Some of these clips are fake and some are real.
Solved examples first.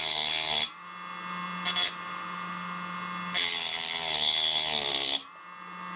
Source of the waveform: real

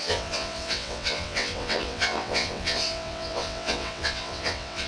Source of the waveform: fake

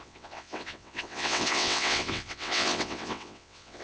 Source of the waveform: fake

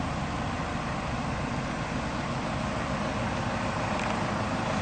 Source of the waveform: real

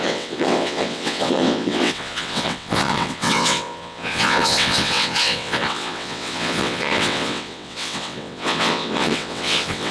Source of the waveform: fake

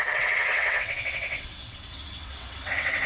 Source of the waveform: fake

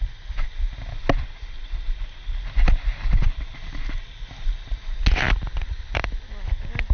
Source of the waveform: real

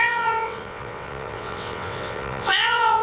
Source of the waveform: fake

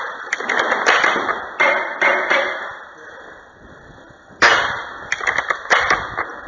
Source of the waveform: real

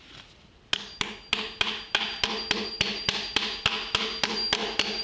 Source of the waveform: real